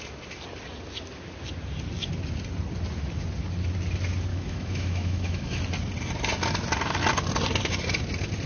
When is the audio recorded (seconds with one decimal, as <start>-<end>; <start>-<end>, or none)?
0.0-4.3; 5.6-8.5